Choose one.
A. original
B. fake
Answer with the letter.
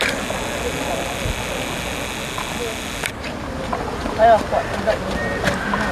A